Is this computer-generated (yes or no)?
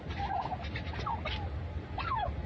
no